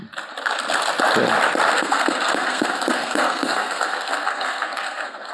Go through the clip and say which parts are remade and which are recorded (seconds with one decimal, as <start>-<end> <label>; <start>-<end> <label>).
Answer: 0.0-1.7 recorded; 1.7-5.3 remade

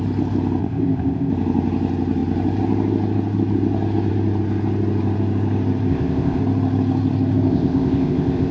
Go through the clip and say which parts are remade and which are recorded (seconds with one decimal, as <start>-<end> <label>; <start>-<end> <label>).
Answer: 0.0-0.6 recorded; 0.6-1.3 remade; 1.3-5.9 recorded; 5.9-6.4 remade; 6.4-7.5 recorded; 7.5-8.5 remade